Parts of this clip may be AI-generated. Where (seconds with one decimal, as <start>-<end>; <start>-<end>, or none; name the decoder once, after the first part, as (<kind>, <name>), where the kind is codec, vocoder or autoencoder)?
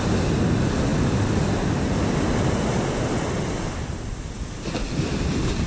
0.9-1.5 (vocoder, BigVGAN v2)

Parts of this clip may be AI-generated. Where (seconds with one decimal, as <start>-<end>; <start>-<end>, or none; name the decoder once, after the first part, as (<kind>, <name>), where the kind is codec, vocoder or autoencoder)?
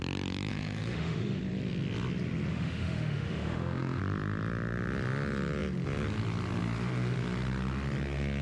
0.5-1.4 (autoencoder, DAC-VAE); 2.5-4.0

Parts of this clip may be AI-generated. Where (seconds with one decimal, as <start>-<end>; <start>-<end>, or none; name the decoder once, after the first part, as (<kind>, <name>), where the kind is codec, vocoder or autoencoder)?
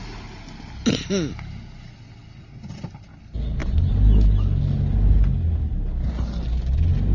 none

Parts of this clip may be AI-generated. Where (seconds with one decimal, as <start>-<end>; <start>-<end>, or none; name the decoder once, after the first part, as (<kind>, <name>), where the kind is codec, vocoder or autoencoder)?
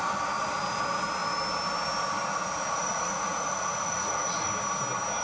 2.3-4.5 (vocoder, Vocos)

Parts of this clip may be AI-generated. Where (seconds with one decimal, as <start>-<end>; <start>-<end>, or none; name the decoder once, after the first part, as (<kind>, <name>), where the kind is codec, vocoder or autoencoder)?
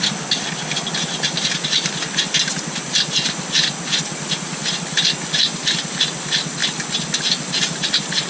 4.1-4.6 (vocoder, Vocos)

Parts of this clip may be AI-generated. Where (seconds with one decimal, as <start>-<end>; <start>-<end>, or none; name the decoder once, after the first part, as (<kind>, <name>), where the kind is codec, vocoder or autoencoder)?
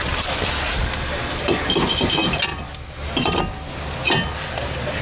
none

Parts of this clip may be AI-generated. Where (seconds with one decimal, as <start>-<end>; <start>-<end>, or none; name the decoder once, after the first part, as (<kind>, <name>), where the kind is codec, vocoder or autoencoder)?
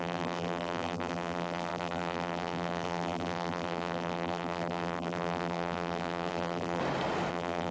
0.0-6.8 (vocoder, BigVGAN v2); 7.3-7.7